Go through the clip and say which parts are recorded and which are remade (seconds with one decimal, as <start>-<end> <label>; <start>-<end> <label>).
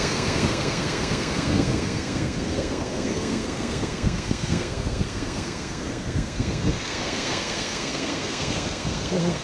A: 0.0-9.4 remade